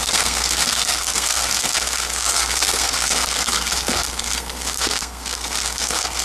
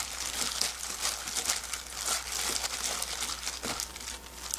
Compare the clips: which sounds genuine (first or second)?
second